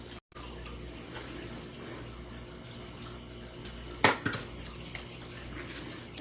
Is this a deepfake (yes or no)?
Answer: no